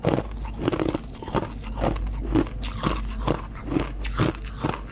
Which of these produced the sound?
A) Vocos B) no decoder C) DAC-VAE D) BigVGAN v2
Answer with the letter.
B